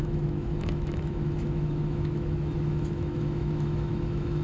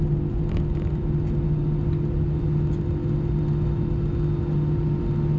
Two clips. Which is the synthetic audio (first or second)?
first